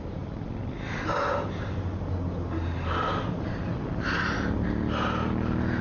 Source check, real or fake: real